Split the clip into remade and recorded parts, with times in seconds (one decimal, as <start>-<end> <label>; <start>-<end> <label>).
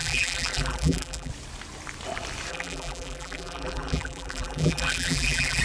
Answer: 0.0-1.3 remade; 1.3-2.5 recorded; 2.5-5.6 remade